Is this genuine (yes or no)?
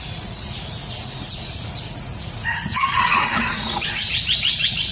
no